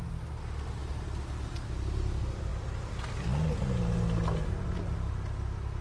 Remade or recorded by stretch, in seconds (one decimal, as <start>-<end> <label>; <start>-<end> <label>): 0.0-5.8 recorded